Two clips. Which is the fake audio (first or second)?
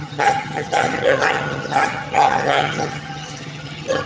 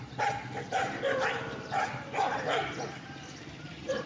first